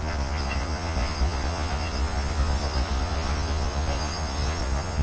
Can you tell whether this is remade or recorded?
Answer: remade